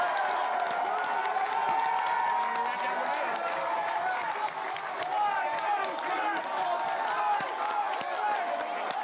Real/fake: real